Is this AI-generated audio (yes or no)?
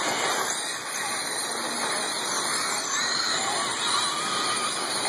no